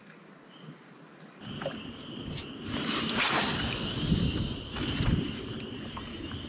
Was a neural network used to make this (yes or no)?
no